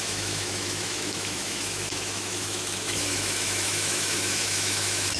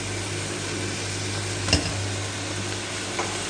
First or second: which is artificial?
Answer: first